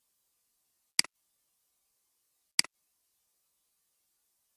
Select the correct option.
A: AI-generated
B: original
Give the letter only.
B